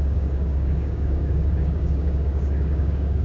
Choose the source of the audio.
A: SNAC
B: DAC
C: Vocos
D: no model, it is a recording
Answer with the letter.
B